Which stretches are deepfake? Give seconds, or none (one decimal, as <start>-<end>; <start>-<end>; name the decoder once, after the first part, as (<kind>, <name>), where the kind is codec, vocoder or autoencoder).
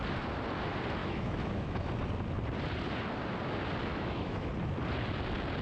1.0-1.9 (autoencoder, DAC-VAE); 3.9-4.5